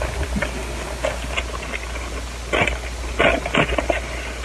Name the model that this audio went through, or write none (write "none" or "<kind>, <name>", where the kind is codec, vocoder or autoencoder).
none